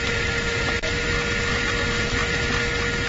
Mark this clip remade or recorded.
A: recorded